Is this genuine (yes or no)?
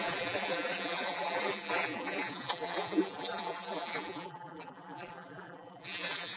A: no